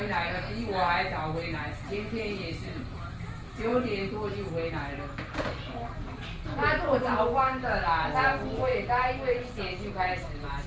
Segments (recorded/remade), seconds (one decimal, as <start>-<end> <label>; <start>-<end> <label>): 0.0-10.7 recorded